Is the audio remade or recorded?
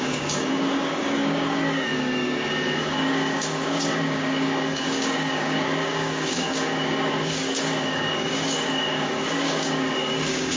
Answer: remade